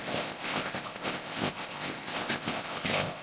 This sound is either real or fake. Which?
fake